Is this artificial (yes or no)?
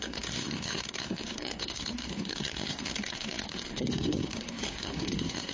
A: yes